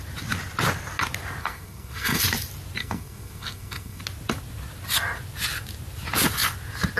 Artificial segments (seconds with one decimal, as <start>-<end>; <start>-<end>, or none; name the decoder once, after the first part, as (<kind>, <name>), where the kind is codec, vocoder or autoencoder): 1.4-2.2 (codec, SNAC); 2.8-4.0